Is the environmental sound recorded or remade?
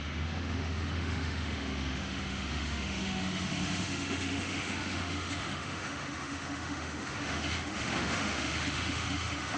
remade